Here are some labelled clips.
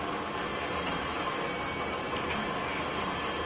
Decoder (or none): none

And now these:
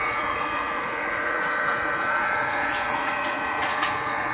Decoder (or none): vocoder, Vocos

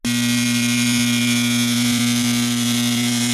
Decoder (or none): none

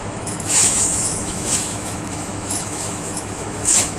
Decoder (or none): autoencoder, DAC-VAE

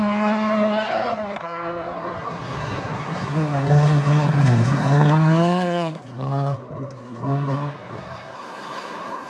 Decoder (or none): codec, SNAC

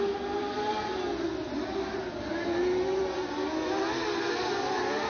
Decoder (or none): none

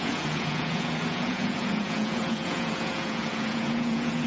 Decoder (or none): vocoder, Vocos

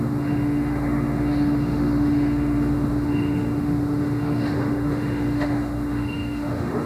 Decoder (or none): autoencoder, DAC-VAE